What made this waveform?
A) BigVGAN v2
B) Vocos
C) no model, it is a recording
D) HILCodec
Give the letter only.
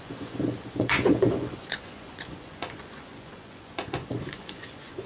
B